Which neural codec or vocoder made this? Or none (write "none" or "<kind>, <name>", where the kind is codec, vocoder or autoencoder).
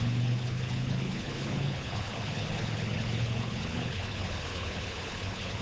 codec, HILCodec